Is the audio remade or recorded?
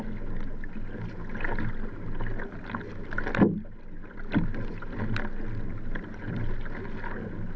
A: recorded